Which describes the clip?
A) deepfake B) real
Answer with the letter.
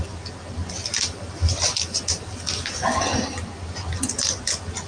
B